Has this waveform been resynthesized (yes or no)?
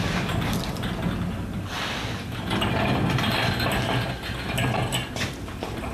no